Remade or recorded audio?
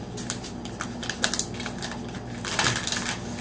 recorded